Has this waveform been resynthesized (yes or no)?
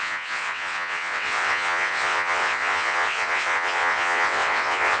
yes